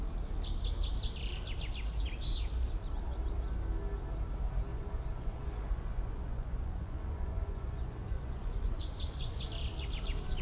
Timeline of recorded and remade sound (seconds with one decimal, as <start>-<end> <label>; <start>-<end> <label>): 0.0-4.7 recorded; 4.7-9.5 remade; 9.5-10.4 recorded